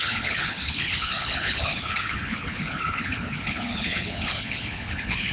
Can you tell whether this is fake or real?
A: fake